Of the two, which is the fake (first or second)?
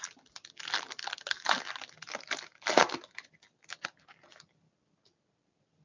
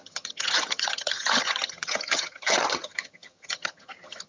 second